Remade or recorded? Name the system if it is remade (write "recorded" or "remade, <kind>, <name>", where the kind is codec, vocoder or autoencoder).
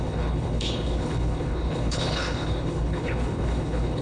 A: remade, codec, HILCodec